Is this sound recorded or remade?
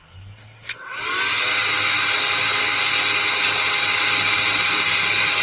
recorded